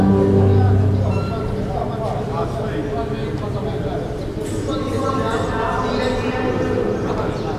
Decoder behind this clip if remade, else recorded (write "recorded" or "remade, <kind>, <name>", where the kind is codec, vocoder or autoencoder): recorded